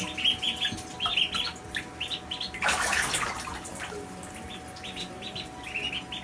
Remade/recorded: recorded